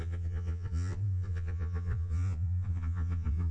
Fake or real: fake